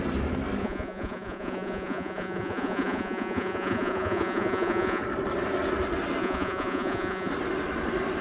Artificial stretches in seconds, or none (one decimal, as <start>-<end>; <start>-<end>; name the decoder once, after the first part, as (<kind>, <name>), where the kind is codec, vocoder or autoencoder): 0.6-5.0 (vocoder, Vocos); 6.2-7.3